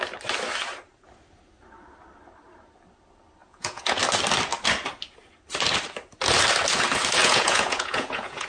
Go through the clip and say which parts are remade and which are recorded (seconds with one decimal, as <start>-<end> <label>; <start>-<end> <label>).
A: 0.0-3.4 recorded; 3.4-4.0 remade; 4.0-7.2 recorded; 7.2-8.5 remade